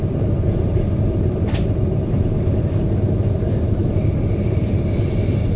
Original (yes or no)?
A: yes